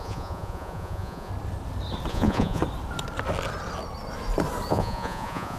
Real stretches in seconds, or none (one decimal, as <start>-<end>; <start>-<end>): 1.3-2.1; 2.6-4.7

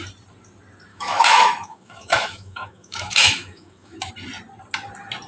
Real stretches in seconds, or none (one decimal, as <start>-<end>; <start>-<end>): 0.0-0.9; 4.1-5.3

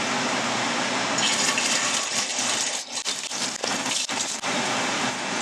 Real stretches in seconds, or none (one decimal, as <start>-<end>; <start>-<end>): 0.0-5.4

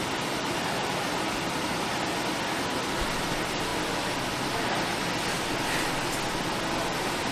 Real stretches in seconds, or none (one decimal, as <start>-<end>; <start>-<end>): 2.0-7.3

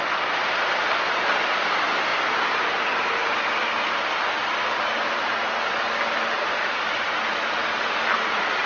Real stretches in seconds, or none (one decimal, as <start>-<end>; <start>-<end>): 0.0-8.7